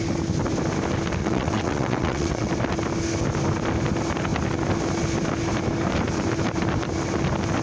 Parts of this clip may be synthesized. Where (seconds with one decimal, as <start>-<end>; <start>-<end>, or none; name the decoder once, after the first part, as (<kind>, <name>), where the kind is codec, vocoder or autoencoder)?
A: 1.2-2.5 (vocoder, WaveNeXt)